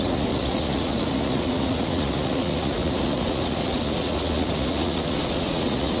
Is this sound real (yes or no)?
no